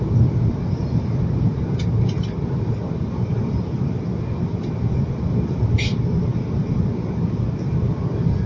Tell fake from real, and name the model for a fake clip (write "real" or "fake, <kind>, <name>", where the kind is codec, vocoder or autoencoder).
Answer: real